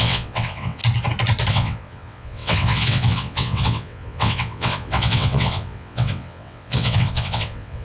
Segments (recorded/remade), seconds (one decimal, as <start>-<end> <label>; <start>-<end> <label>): 0.0-0.8 remade; 0.8-1.5 recorded; 1.5-7.8 remade